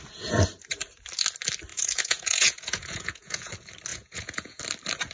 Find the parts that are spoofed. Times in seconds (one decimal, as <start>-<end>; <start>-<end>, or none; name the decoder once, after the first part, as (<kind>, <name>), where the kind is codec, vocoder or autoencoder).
1.7-3.5 (vocoder, Vocos); 3.9-4.6